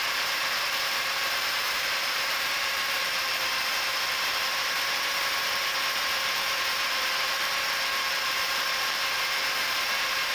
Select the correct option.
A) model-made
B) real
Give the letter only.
A